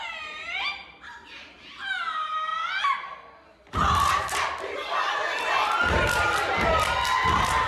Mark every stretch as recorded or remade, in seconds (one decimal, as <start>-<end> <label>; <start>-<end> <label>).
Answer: 0.0-7.7 recorded